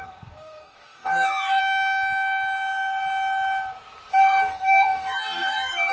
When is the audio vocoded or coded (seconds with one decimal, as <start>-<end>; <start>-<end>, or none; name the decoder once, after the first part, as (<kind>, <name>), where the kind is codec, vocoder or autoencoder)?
0.0-1.6 (codec, DAC); 4.1-5.9